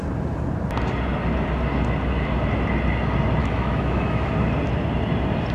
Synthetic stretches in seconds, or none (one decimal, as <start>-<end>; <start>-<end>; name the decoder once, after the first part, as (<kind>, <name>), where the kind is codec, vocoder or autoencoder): 3.4-4.3 (autoencoder, DAC-VAE)